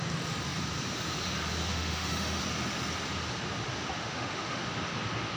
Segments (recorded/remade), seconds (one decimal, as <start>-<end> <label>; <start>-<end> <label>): 0.0-1.7 recorded; 1.7-2.4 remade; 2.4-4.0 recorded; 4.0-4.6 remade; 4.6-5.4 recorded